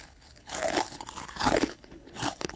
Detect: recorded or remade remade